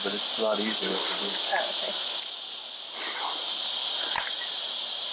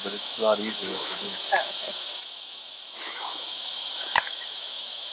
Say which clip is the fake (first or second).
second